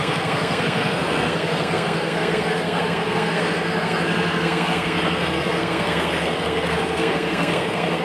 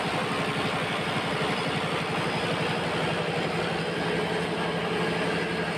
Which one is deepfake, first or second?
first